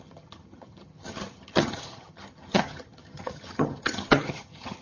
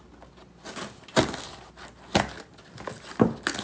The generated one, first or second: first